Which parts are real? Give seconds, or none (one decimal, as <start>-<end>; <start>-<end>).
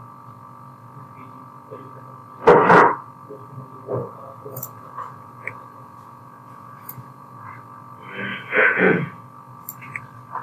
0.0-4.0; 7.5-8.3; 9.2-10.4